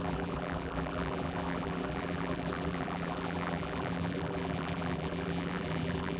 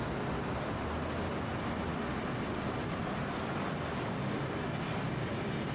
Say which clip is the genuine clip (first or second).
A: second